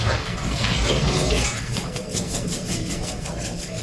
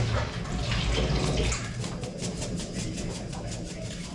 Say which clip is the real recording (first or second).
second